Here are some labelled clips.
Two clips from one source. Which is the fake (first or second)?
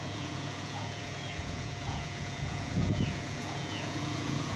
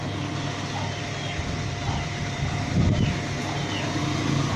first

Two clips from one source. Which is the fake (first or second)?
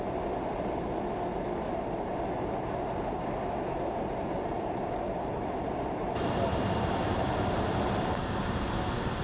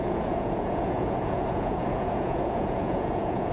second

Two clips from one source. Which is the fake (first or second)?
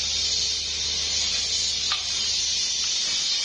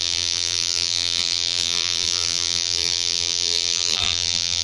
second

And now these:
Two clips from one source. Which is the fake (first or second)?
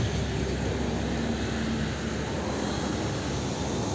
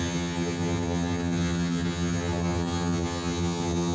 second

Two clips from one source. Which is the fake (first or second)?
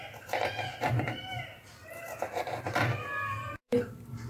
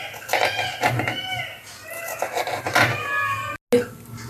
first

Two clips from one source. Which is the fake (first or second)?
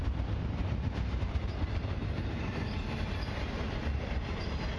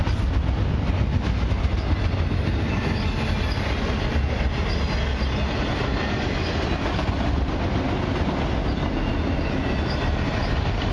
first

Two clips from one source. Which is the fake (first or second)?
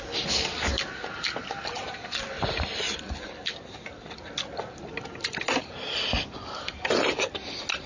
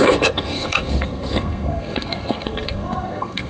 second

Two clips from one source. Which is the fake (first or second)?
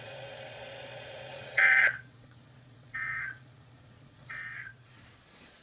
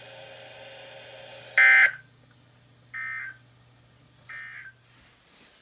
first